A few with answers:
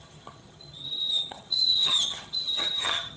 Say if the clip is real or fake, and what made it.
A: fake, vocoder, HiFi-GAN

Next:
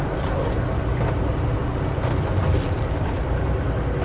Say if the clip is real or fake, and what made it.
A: real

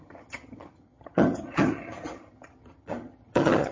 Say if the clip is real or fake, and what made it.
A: fake, vocoder, HiFi-GAN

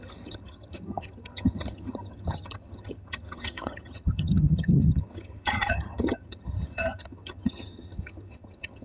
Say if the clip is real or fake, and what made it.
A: fake, vocoder, HiFi-GAN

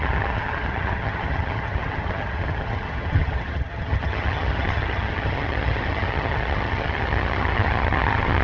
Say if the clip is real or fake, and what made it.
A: fake, vocoder, HiFi-GAN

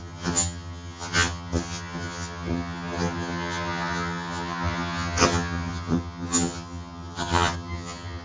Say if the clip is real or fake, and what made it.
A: fake, vocoder, HiFi-GAN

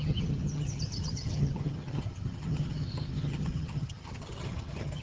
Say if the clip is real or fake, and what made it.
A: fake, vocoder, HiFi-GAN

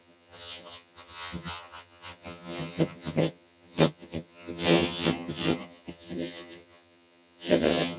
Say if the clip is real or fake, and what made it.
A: fake, vocoder, HiFi-GAN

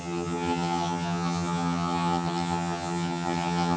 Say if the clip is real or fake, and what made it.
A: fake, vocoder, HiFi-GAN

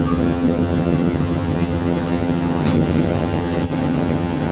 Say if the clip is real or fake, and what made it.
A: fake, vocoder, HiFi-GAN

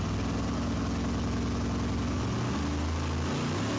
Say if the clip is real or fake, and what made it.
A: real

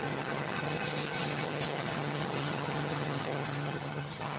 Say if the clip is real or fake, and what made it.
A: fake, vocoder, HiFi-GAN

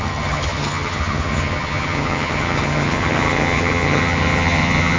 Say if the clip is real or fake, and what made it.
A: fake, vocoder, HiFi-GAN